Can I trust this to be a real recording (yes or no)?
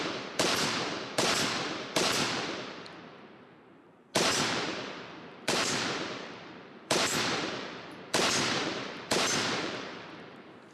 no